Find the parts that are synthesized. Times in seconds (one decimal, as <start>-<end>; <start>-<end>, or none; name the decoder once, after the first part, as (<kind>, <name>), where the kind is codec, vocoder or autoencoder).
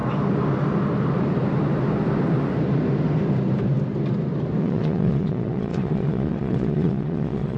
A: 4.6-7.6 (vocoder, Vocos)